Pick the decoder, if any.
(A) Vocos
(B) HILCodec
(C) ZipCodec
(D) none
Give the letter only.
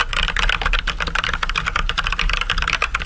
D